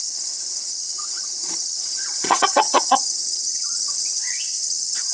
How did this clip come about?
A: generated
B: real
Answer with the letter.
A